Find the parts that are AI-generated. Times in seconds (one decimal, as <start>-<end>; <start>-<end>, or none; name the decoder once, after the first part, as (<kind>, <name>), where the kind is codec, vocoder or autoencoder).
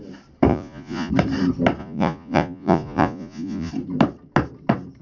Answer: 0.5-1.1 (vocoder, Vocos); 1.8-3.7